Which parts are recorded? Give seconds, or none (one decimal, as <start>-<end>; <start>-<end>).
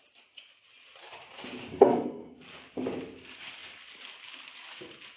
0.0-1.7; 2.4-5.2